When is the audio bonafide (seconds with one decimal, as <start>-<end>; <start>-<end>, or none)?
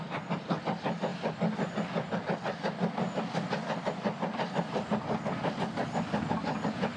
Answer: 0.0-7.0